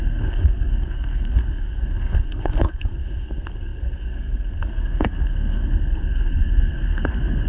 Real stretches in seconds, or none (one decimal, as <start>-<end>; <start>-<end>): none

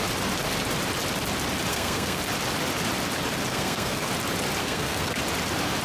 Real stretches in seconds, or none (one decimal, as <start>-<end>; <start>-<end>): 0.0-1.7; 2.2-3.5; 4.1-4.6; 5.2-5.8

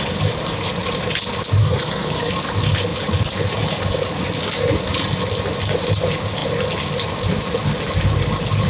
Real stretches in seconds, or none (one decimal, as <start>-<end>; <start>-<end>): 0.0-1.6; 2.3-8.7

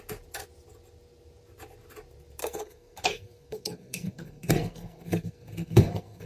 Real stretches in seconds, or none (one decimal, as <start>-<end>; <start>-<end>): 0.0-2.4

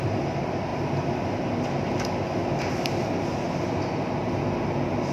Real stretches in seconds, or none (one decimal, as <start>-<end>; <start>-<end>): 0.0-5.1

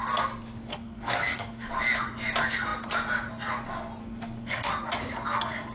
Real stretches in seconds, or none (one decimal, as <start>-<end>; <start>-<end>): 0.0-0.7; 1.7-4.0; 4.7-5.7

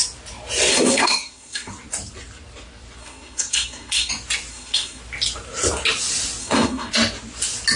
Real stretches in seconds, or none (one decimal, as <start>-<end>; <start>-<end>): 0.0-0.7; 1.7-3.0; 4.1-4.5; 5.0-6.4; 6.9-7.8

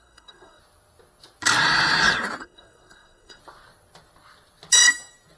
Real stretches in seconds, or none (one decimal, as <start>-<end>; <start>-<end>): 0.6-2.4; 3.4-5.4